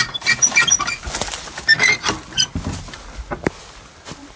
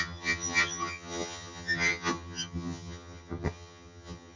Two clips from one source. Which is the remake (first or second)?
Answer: second